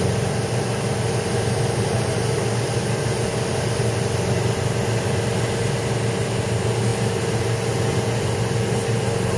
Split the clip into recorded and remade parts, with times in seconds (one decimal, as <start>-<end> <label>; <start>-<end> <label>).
0.0-9.4 recorded